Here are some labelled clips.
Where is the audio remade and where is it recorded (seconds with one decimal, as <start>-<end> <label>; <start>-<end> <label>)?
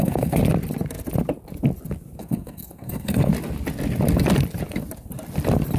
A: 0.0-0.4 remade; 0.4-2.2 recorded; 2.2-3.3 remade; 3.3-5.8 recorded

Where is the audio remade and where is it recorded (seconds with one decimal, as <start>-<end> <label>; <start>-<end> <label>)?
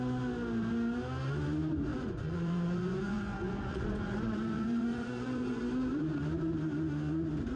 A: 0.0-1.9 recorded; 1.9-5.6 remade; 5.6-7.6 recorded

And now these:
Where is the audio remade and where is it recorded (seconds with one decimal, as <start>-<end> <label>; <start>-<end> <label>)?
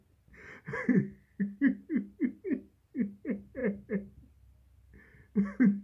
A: 0.0-5.8 recorded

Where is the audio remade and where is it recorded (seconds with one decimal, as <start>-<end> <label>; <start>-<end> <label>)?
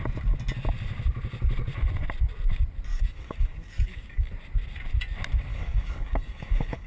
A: 0.0-2.9 recorded; 2.9-4.3 remade; 4.3-5.5 recorded; 5.5-6.9 remade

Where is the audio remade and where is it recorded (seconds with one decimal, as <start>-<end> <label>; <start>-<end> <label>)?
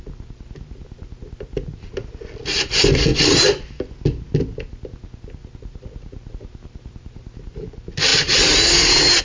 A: 0.0-9.2 recorded